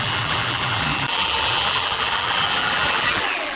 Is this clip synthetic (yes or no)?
yes